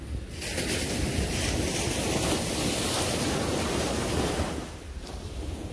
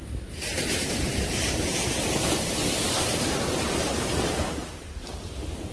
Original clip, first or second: first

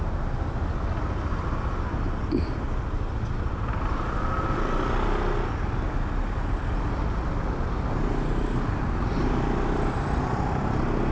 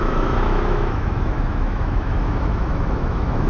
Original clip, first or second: first